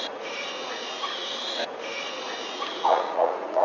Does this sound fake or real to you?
fake